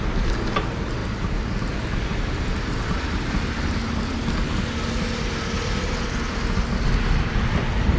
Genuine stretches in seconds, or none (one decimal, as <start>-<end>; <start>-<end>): 0.0-8.0